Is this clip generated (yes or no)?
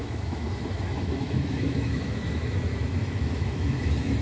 yes